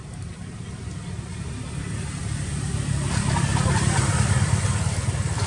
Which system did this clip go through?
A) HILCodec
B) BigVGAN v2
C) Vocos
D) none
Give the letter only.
D